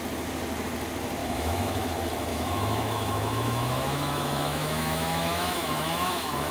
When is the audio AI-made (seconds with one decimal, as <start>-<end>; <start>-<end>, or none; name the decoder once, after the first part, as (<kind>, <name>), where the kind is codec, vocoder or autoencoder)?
1.2-1.9 (autoencoder, DAC-VAE); 2.3-6.5